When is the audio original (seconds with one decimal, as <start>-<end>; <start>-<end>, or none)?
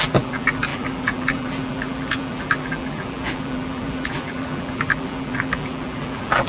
none